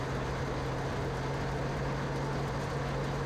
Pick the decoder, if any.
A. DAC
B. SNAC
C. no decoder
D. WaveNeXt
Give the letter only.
C